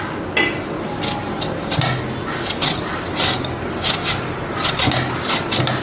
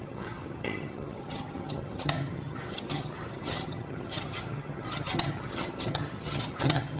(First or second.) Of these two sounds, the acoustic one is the first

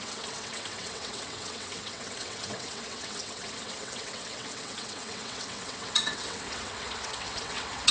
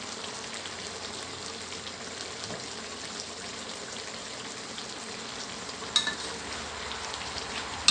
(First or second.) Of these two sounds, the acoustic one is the second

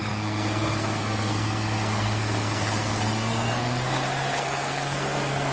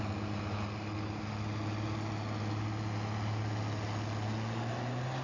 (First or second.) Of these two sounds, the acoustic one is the second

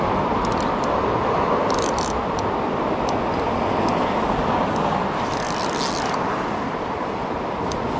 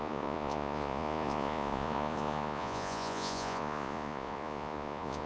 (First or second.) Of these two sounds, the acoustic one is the first